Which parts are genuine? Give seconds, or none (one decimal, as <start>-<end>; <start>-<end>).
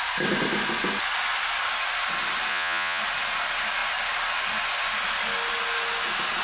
0.0-2.5; 3.0-6.4